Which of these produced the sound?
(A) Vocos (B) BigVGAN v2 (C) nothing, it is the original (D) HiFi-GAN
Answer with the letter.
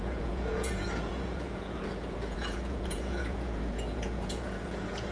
A